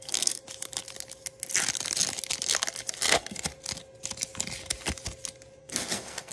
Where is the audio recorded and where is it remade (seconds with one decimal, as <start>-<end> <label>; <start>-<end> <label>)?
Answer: 0.0-0.4 remade; 0.4-2.9 recorded; 2.9-3.5 remade; 3.5-5.6 recorded; 5.6-6.3 remade